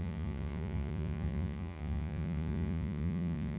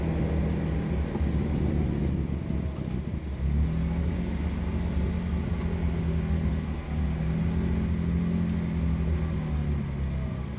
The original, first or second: second